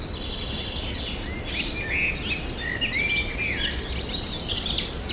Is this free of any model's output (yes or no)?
yes